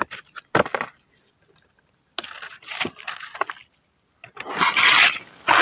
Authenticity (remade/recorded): recorded